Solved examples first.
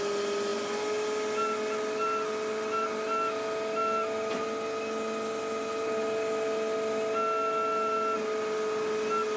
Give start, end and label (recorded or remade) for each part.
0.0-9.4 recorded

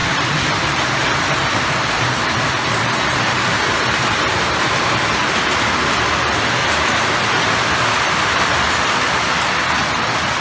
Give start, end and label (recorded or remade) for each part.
0.0-1.0 remade; 1.0-3.6 recorded; 3.6-4.6 remade; 4.6-10.4 recorded

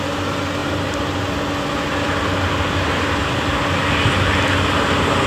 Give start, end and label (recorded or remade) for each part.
0.0-0.6 recorded; 0.6-1.2 remade; 1.2-5.3 recorded

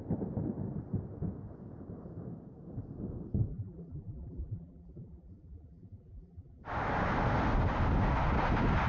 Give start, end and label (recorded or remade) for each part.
0.0-3.5 recorded; 3.5-6.6 remade; 6.6-8.9 recorded

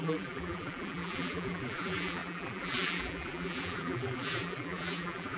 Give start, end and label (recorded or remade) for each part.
0.0-5.4 remade

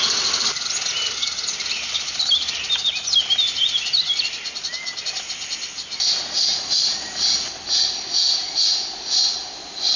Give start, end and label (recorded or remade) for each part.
0.0-10.0 recorded

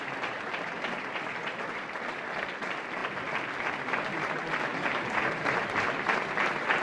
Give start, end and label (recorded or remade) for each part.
0.0-4.7 recorded; 4.7-5.9 remade; 5.9-6.8 recorded